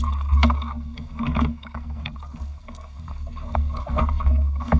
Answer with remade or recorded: remade